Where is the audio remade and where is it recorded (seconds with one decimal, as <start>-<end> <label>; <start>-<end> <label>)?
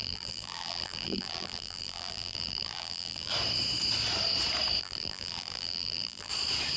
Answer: 0.0-3.3 remade; 3.3-4.8 recorded; 4.8-6.3 remade; 6.3-6.8 recorded